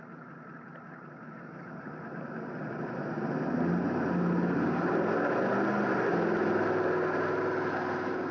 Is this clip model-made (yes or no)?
no